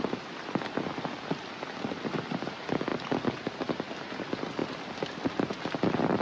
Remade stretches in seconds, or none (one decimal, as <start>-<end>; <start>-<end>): none